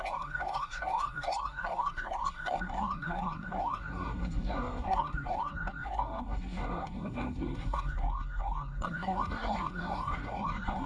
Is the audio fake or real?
fake